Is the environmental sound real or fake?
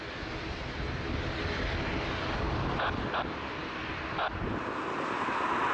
real